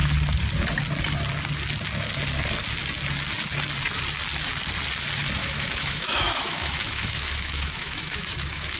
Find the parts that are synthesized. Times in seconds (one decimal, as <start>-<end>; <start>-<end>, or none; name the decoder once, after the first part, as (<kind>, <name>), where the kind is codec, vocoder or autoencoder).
5.4-8.8 (autoencoder, DAC-VAE)